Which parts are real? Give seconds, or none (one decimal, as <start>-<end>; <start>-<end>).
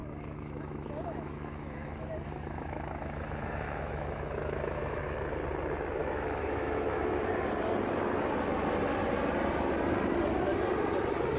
5.0-6.0; 7.3-11.4